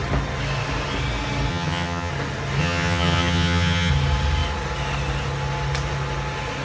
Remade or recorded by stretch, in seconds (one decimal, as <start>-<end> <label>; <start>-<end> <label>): 0.0-1.5 recorded; 1.5-2.1 remade; 2.1-2.6 recorded; 2.6-3.9 remade; 3.9-6.6 recorded